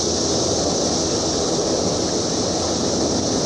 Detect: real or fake real